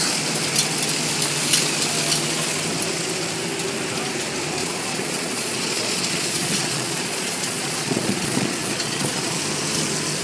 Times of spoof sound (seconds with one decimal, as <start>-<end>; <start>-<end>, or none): 4.6-9.4